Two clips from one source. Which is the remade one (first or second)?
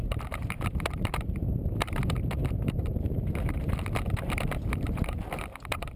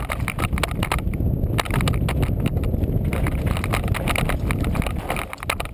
first